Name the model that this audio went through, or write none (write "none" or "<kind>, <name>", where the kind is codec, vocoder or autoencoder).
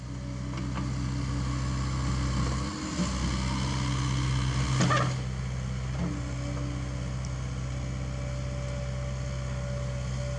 none